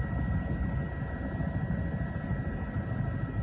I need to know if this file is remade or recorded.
recorded